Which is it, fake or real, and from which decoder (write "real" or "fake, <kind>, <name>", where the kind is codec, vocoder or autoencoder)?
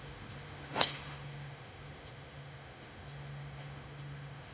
fake, autoencoder, DAC-VAE